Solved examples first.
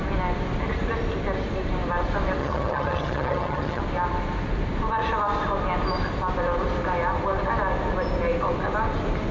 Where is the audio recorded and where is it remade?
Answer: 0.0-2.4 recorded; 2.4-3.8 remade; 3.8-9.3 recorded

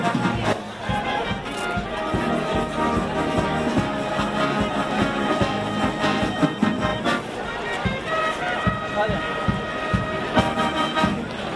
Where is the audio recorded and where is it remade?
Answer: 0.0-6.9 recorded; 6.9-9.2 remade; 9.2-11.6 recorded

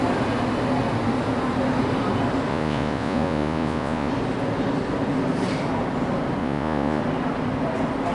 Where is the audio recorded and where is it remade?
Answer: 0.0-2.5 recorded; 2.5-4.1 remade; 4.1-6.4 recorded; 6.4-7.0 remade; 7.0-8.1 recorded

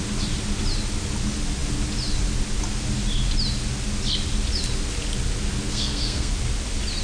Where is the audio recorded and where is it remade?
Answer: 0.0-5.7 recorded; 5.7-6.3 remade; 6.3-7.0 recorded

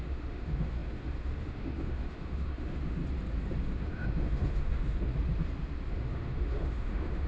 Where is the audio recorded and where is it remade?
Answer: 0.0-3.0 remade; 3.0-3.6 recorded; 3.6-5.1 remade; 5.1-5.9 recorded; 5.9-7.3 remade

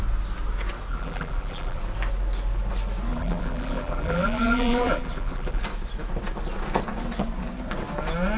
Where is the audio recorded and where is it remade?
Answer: 0.0-0.9 recorded; 0.9-1.8 remade; 1.8-3.1 recorded; 3.1-5.6 remade; 5.6-8.4 recorded

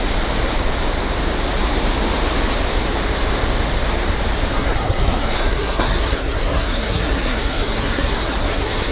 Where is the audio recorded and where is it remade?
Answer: 0.0-4.5 recorded; 4.5-8.9 remade